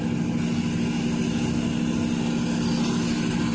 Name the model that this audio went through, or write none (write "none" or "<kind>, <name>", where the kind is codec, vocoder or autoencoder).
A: none